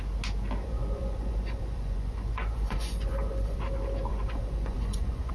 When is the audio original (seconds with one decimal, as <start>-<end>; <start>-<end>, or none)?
0.0-0.6; 3.6-4.1